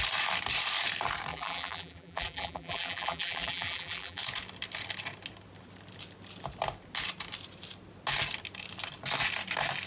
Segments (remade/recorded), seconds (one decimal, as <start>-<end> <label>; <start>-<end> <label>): 0.0-1.3 recorded; 1.3-4.2 remade; 4.2-9.9 recorded